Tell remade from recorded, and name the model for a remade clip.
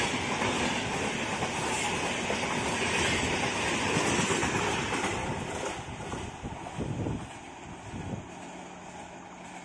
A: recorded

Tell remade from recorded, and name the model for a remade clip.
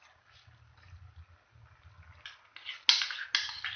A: recorded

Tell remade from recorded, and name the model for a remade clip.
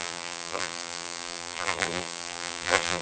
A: remade, vocoder, BigVGAN v2